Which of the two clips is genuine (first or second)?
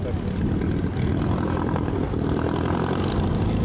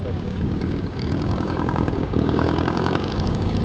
first